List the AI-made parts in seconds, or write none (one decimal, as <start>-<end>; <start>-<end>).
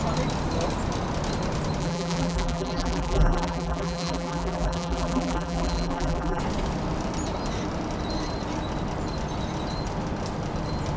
1.8-6.4